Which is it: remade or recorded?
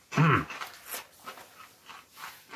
recorded